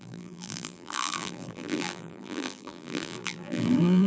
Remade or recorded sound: remade